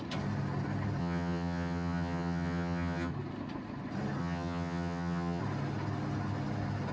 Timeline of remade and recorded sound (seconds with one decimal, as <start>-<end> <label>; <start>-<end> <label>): 0.0-1.0 recorded; 1.0-3.1 remade; 3.1-4.2 recorded; 4.2-5.4 remade; 5.4-6.9 recorded